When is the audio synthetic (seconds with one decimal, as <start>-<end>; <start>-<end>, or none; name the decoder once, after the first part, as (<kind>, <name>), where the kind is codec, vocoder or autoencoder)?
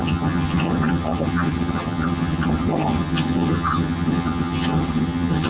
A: 0.0-5.5 (vocoder, HiFi-GAN)